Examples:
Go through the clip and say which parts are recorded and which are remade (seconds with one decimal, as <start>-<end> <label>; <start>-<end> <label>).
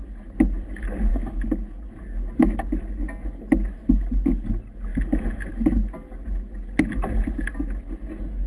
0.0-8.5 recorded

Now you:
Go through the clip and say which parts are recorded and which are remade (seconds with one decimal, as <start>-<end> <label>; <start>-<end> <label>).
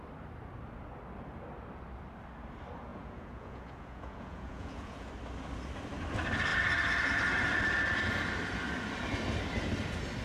0.0-2.9 recorded; 2.9-5.1 remade; 5.1-10.2 recorded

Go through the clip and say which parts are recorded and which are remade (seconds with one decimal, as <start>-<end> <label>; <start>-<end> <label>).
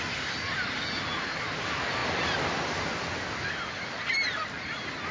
0.0-5.1 recorded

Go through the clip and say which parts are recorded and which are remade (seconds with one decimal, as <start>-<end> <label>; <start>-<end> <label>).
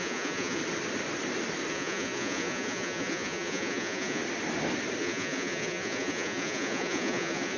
0.0-0.6 remade; 0.6-1.7 recorded; 1.7-4.2 remade; 4.2-5.0 recorded; 5.0-7.6 remade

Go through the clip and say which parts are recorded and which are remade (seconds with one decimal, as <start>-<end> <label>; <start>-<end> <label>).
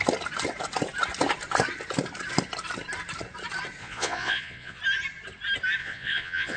0.0-3.8 recorded; 3.8-4.8 remade; 4.8-5.8 recorded; 5.8-6.6 remade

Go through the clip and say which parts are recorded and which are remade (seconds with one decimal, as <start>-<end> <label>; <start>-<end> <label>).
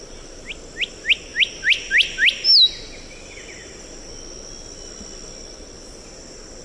0.0-6.6 recorded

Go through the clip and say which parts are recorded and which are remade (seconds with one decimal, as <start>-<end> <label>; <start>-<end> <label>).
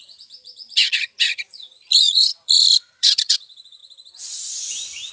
0.0-3.8 remade; 3.8-5.1 recorded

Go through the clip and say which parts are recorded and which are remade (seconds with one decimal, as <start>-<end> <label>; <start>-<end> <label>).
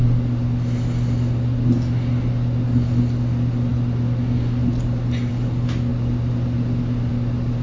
0.0-7.6 recorded